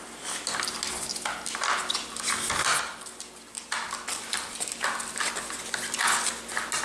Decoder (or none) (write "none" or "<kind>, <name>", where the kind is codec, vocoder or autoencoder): none